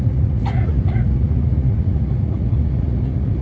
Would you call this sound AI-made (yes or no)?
yes